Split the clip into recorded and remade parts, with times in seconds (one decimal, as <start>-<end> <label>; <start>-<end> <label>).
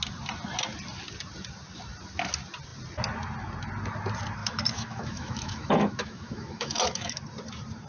0.0-4.4 recorded; 4.4-7.2 remade; 7.2-7.9 recorded